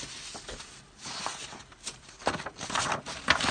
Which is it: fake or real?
fake